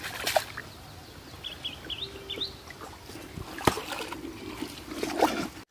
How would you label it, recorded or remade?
recorded